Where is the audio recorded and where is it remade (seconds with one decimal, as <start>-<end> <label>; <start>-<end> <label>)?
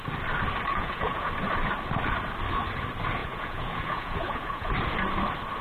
0.0-0.7 recorded; 0.7-1.3 remade; 1.3-3.2 recorded; 3.2-4.7 remade; 4.7-5.6 recorded